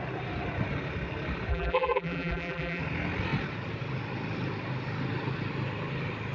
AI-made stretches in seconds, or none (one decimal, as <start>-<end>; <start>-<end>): 1.5-2.8